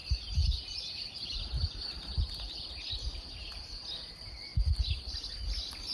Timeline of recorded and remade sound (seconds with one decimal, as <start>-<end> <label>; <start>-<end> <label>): 0.0-5.9 recorded

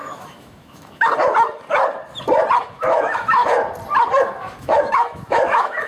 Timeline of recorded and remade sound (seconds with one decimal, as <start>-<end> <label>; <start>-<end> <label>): 0.0-1.1 remade; 1.1-2.6 recorded; 2.6-3.4 remade; 3.4-4.4 recorded; 4.4-5.9 remade

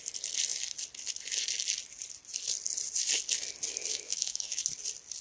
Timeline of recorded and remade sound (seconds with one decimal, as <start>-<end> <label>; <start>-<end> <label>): 0.0-3.9 recorded; 3.9-4.6 remade; 4.6-5.2 recorded

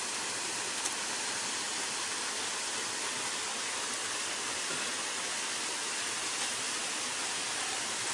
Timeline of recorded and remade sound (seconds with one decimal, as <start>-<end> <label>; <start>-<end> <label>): 0.0-8.1 recorded